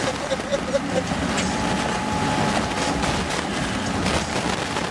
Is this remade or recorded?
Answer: recorded